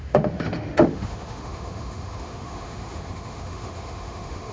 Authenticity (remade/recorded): remade